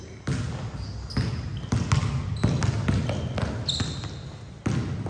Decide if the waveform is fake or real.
real